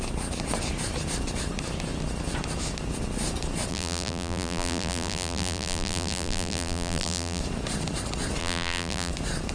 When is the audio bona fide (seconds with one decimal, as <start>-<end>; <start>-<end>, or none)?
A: 0.0-3.7; 7.4-8.4; 9.1-9.5